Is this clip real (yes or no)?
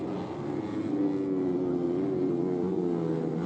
yes